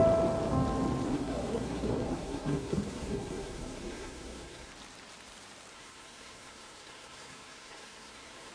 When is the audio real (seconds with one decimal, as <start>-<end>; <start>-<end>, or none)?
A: 0.0-1.1; 4.7-5.7